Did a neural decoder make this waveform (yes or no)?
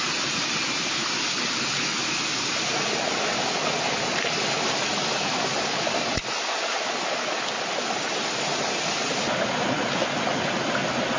no